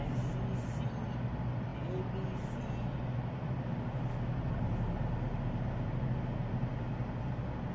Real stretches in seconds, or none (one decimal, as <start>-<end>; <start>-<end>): 0.0-7.7